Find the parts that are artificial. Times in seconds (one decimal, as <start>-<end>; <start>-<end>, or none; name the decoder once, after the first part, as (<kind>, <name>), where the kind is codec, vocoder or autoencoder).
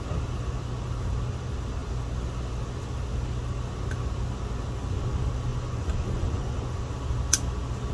5.5-6.8 (vocoder, Vocos)